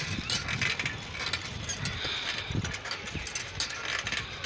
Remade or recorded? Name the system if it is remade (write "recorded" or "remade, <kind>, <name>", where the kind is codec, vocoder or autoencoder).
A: recorded